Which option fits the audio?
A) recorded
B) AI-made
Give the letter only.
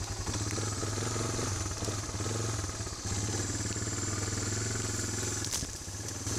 A